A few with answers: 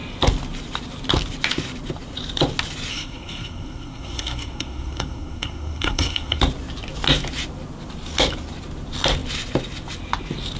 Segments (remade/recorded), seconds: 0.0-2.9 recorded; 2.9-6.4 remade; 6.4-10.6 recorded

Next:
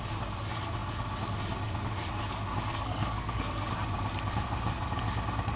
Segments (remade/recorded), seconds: 0.0-2.7 recorded; 2.7-3.7 remade; 3.7-5.6 recorded